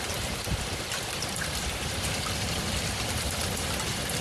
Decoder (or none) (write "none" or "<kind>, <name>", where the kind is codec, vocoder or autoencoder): none